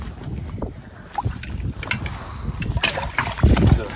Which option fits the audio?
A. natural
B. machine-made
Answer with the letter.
A